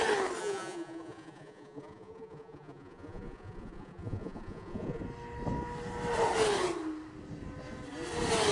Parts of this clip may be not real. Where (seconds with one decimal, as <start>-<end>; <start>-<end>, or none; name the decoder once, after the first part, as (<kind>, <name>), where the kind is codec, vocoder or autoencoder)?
0.4-5.0 (vocoder, Vocos)